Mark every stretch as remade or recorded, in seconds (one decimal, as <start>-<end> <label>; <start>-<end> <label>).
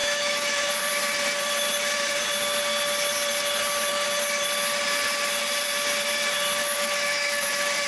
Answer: 0.0-0.7 remade; 0.7-6.6 recorded; 6.6-7.5 remade; 7.5-7.9 recorded